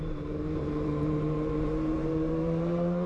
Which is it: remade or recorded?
remade